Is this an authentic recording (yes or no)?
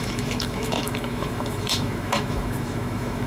no